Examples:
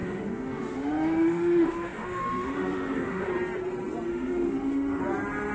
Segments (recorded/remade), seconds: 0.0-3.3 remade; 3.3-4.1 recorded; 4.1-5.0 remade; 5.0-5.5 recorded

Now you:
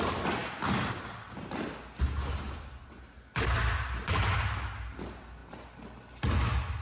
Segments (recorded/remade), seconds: 0.0-6.8 recorded

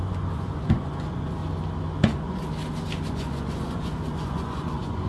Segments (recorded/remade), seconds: 0.0-1.4 remade; 1.4-2.0 recorded; 2.0-2.4 remade; 2.4-3.1 recorded; 3.1-5.1 remade

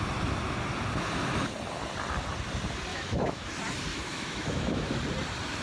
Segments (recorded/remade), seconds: 0.0-2.9 recorded; 2.9-3.5 remade; 3.5-3.9 recorded; 3.9-4.9 remade; 4.9-5.6 recorded

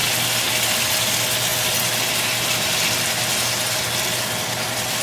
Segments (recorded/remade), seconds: 0.0-5.0 recorded

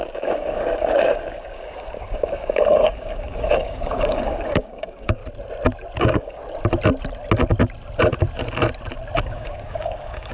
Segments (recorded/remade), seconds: 0.0-5.2 remade; 5.2-6.0 recorded; 6.0-6.4 remade; 6.4-9.2 recorded; 9.2-10.3 remade